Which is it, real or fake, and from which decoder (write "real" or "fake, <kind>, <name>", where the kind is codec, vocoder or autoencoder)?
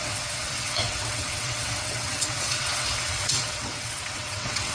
fake, vocoder, WaveNeXt